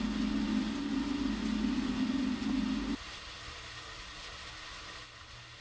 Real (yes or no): yes